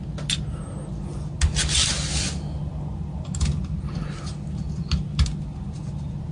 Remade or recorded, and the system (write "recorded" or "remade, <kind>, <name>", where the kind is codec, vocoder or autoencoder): recorded